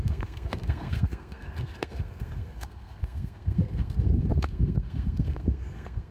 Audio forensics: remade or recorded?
remade